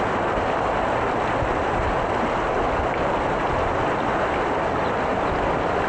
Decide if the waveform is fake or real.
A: real